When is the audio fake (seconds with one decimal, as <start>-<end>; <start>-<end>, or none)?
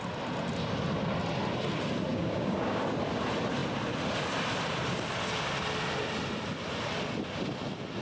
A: 2.1-2.8